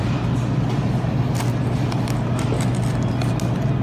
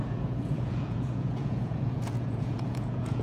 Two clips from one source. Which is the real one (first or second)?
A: first